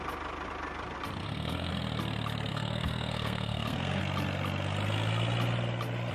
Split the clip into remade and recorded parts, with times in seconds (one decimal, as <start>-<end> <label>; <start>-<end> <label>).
0.0-1.2 recorded; 1.2-1.7 remade; 1.7-2.5 recorded; 2.5-4.0 remade; 4.0-6.1 recorded